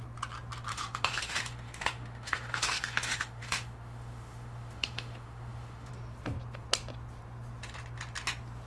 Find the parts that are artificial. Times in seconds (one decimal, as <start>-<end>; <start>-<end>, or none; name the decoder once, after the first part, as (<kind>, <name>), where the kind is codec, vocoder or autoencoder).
0.7-5.9 (autoencoder, DAC-VAE)